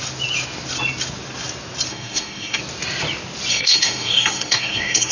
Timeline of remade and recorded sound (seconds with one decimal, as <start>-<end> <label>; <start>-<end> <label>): 0.0-1.9 recorded; 1.9-2.6 remade; 2.6-3.5 recorded; 3.5-5.1 remade